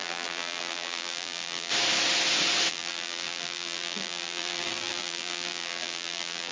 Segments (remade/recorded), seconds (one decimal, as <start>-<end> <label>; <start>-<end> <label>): 0.0-1.7 remade; 1.7-2.7 recorded; 2.7-6.5 remade